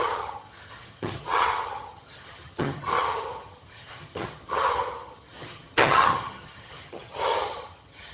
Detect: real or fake fake